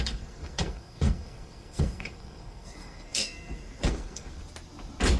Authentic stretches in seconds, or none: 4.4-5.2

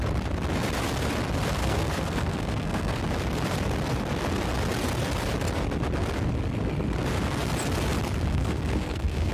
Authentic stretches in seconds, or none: 0.0-1.6; 3.0-8.3

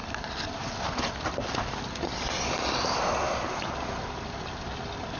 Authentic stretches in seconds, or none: 0.0-5.2

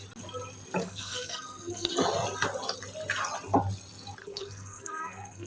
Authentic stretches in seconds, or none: 0.0-0.8; 1.9-4.2

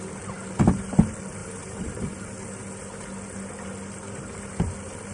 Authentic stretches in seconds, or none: 0.0-1.4; 2.1-5.1

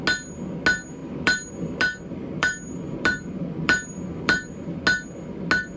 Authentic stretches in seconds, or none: 0.0-1.0; 4.5-5.8

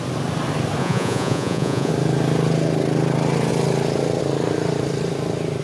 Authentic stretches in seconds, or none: 0.0-0.8; 1.9-5.6

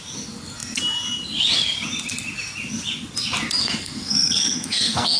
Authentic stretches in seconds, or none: 0.0-3.6